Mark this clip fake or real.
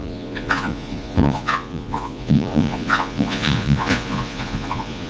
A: fake